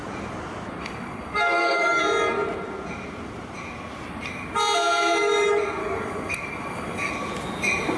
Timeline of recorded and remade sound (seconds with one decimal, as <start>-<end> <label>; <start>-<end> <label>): 0.0-0.8 recorded; 0.8-2.0 remade; 2.0-5.8 recorded; 5.8-7.1 remade; 7.1-8.0 recorded